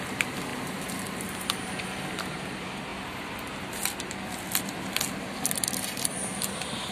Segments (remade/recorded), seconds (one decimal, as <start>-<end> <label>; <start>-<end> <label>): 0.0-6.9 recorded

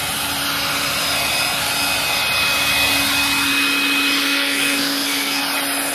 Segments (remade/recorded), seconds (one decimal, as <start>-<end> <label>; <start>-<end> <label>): 0.0-4.2 recorded; 4.2-5.4 remade; 5.4-5.9 recorded

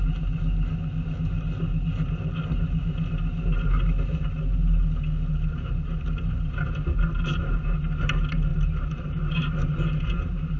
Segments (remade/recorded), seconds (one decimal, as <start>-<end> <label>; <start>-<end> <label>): 0.0-8.5 recorded; 8.5-10.6 remade

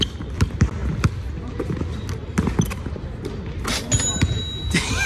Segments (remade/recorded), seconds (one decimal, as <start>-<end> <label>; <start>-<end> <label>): 0.0-5.1 recorded